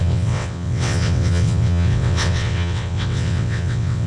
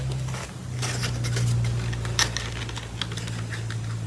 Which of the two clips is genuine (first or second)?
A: second